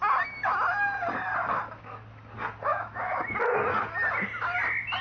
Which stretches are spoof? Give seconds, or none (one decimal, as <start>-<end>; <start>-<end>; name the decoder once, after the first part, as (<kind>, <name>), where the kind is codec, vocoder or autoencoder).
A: 2.7-3.3 (autoencoder, DAC-VAE)